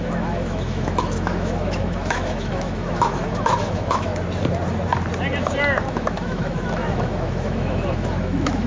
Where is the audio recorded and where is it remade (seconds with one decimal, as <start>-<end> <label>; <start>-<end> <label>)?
0.0-4.1 remade; 4.1-5.8 recorded; 5.8-8.7 remade

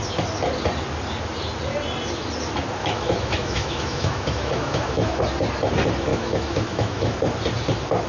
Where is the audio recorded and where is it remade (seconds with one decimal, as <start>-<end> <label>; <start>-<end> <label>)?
0.0-2.8 recorded; 2.8-5.2 remade; 5.2-6.1 recorded; 6.1-7.2 remade; 7.2-8.1 recorded